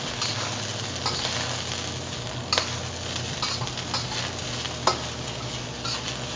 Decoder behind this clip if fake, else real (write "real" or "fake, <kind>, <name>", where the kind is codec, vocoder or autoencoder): real